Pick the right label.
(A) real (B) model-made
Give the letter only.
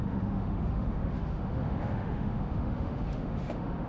B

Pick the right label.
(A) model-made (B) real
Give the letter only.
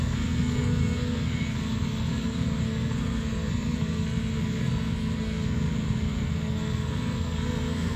A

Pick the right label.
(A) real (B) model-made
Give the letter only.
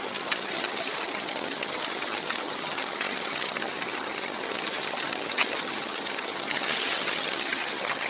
B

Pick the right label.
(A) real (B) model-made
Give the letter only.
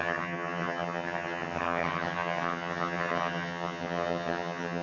B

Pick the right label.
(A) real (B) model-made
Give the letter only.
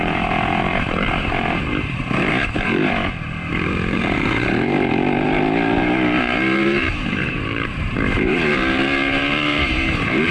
B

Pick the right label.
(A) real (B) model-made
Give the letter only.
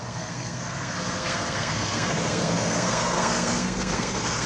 B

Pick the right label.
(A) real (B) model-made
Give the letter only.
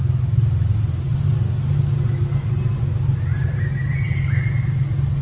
A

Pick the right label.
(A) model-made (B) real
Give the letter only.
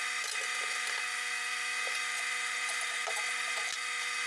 B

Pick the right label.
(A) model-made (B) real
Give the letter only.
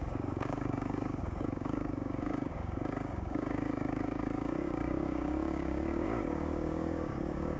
A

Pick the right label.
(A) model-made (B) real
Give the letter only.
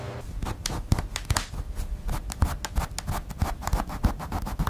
B